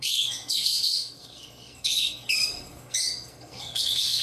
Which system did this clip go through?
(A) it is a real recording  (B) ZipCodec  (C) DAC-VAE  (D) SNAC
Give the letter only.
D